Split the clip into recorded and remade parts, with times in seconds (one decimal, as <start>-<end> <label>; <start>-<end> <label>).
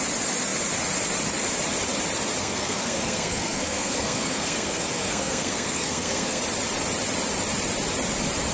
0.0-2.4 recorded; 2.4-6.4 remade; 6.4-8.5 recorded